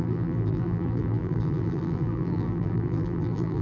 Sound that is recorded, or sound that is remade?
remade